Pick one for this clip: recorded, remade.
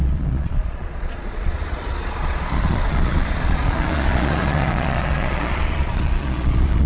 remade